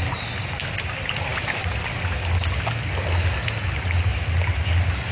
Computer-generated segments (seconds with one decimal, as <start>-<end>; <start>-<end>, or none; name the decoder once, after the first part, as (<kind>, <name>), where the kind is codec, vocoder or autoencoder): none